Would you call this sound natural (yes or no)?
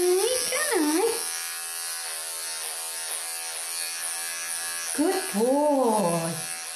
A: yes